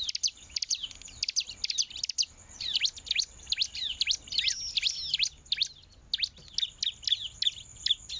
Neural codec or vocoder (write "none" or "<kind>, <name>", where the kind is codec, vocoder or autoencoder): none